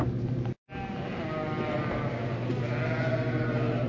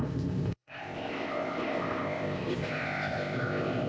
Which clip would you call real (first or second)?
first